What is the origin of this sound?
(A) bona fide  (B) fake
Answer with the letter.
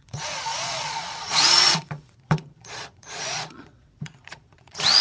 B